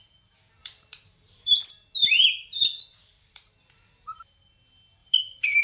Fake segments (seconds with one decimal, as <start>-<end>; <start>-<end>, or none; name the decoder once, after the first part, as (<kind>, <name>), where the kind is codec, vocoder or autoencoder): 0.6-1.5 (vocoder, BigVGAN v2); 2.0-3.6; 5.0-5.6